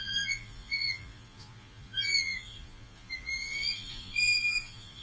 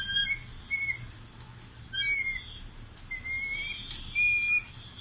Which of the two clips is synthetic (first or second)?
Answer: first